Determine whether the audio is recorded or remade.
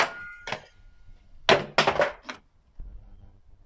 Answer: recorded